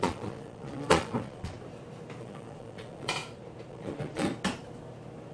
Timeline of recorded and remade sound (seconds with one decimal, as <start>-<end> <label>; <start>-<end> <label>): 0.0-1.5 remade; 1.5-2.2 recorded; 2.2-3.2 remade; 3.2-3.7 recorded; 3.7-4.3 remade; 4.3-5.3 recorded